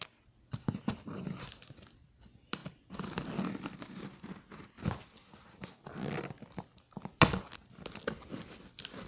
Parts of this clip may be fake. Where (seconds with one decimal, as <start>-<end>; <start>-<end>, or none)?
none